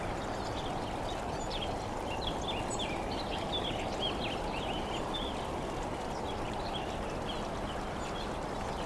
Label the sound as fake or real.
real